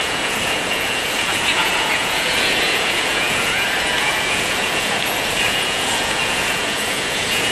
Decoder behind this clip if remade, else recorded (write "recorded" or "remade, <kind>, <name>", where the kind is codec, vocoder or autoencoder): remade, vocoder, Vocos